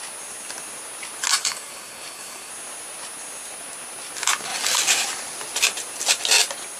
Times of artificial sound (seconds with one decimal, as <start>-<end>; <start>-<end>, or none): 1.3-2.5